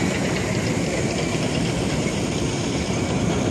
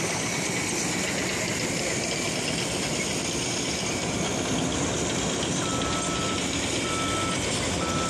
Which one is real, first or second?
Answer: second